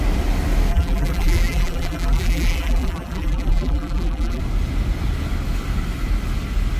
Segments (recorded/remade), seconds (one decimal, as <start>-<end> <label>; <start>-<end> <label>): 0.0-0.7 recorded; 0.7-4.4 remade; 4.4-6.8 recorded